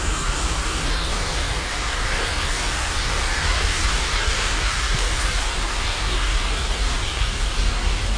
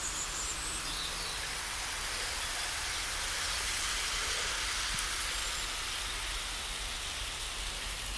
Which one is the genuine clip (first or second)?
second